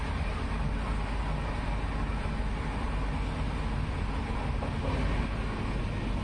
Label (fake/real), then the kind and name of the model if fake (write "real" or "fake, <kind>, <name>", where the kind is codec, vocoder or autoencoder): real